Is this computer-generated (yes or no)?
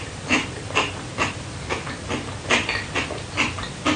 no